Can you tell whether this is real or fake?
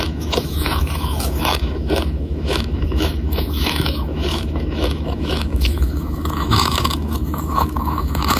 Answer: fake